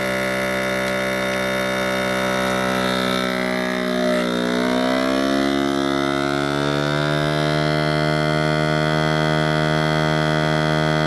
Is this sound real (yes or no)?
yes